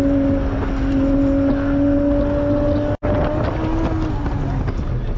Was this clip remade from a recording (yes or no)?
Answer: no